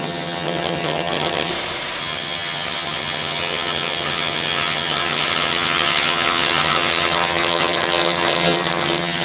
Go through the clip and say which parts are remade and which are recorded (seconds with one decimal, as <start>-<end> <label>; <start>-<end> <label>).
0.0-1.5 remade; 1.5-2.0 recorded; 2.0-9.2 remade